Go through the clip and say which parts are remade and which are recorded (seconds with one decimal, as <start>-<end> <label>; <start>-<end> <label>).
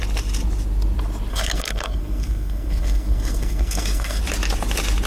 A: 0.0-1.3 recorded; 1.3-4.2 remade; 4.2-5.1 recorded